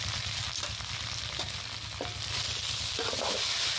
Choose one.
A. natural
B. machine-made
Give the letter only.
A